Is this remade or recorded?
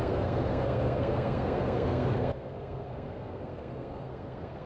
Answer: remade